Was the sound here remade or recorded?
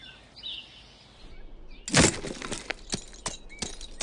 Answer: recorded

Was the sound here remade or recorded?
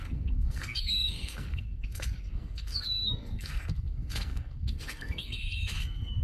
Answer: remade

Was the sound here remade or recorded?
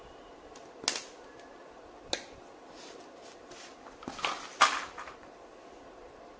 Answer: recorded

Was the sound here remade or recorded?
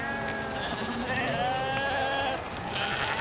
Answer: recorded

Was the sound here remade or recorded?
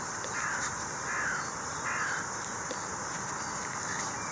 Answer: recorded